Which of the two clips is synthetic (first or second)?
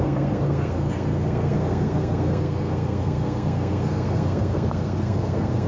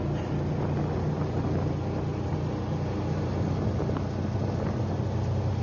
first